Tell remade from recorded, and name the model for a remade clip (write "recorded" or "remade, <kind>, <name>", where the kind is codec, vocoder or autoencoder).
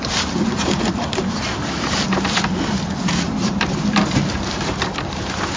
remade, vocoder, BigVGAN v2